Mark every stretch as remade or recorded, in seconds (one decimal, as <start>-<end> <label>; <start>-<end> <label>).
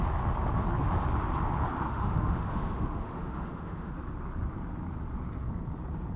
0.0-1.9 recorded; 1.9-3.9 remade; 3.9-6.2 recorded